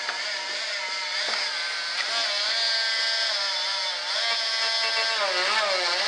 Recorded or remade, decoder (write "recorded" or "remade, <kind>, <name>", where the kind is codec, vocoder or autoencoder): recorded